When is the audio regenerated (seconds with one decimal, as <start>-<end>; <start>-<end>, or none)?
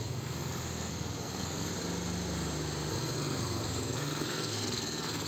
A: 0.0-1.7; 2.9-5.3